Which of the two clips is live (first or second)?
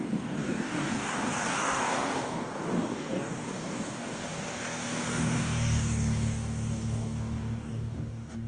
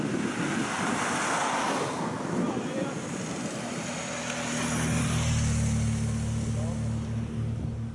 second